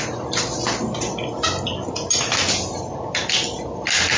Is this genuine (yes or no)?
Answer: yes